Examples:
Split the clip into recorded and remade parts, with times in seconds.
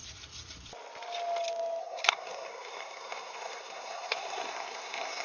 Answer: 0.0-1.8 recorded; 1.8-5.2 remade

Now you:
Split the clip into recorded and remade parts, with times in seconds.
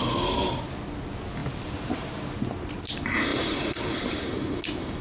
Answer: 0.0-5.0 recorded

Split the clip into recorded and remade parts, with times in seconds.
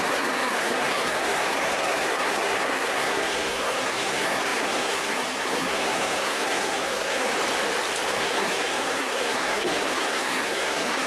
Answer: 0.0-7.3 remade; 7.3-8.1 recorded; 8.1-11.1 remade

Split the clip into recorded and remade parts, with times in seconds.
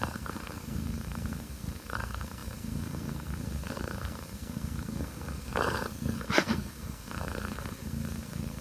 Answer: 0.0-8.6 remade